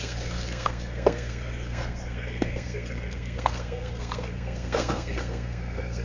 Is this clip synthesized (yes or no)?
yes